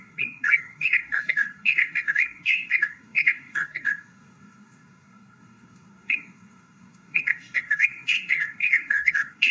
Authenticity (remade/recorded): remade